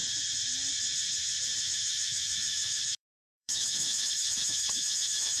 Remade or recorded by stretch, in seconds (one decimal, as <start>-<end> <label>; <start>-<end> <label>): 0.0-1.6 recorded; 1.6-5.4 remade